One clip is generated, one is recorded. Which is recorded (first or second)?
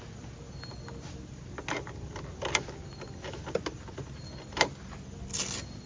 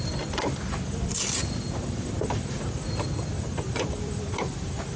first